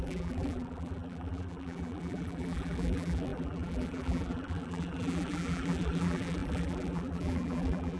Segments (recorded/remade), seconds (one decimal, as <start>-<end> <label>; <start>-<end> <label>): 0.0-8.0 remade